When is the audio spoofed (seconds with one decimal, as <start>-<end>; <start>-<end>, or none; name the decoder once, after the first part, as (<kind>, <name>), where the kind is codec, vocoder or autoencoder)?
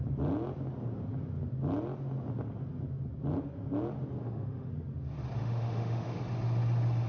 4.2-4.7 (autoencoder, DAC-VAE); 5.4-6.2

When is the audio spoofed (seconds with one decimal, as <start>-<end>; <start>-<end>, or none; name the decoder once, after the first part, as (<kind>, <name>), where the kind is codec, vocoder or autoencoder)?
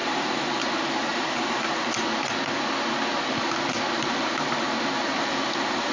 0.0-0.5 (vocoder, BigVGAN v2); 1.1-1.7